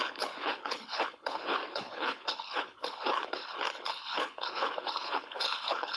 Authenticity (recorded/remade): remade